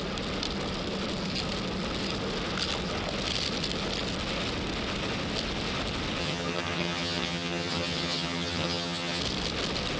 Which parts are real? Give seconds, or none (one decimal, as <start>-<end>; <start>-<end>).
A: 0.0-6.2; 9.2-10.0